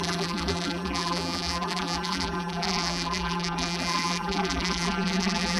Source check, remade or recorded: remade